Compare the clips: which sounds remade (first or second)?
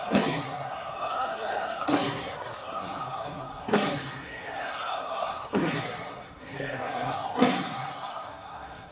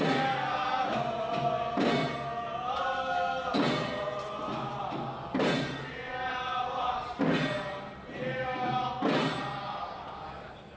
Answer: first